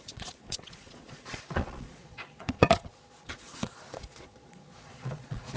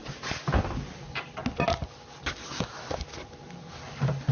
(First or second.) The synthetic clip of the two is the first